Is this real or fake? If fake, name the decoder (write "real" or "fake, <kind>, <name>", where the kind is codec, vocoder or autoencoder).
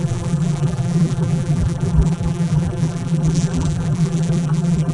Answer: fake, vocoder, BigVGAN v2